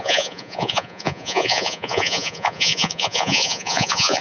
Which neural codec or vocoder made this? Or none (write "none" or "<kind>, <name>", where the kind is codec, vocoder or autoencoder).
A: vocoder, Vocos